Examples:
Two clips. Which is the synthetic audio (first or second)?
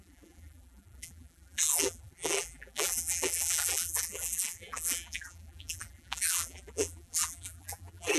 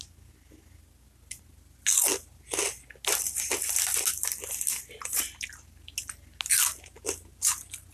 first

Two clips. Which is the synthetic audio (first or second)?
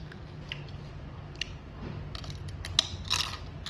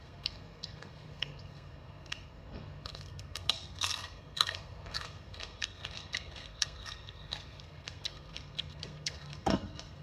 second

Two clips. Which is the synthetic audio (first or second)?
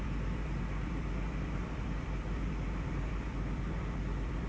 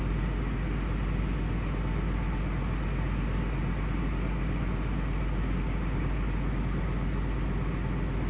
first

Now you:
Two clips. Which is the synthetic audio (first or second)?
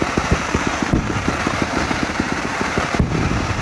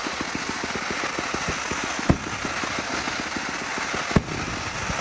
first